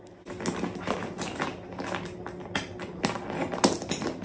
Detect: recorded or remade recorded